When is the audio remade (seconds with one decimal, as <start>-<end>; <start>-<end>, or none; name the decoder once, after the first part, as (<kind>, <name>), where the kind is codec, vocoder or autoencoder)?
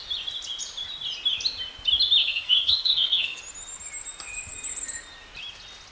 2.2-3.4 (codec, SNAC)